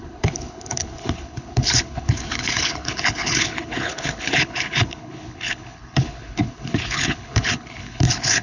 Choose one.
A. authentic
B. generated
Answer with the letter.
B